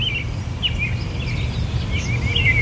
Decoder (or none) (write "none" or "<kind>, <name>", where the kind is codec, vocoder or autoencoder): none